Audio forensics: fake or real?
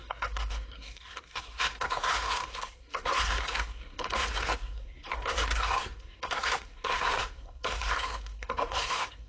fake